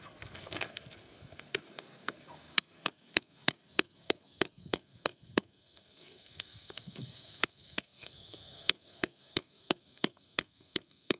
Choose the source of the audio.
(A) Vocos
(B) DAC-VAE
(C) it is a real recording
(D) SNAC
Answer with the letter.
D